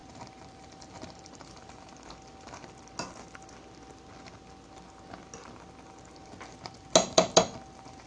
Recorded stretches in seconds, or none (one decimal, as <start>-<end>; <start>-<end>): 2.1-8.1